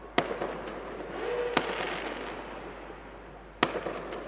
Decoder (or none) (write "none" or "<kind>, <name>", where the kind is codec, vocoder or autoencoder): none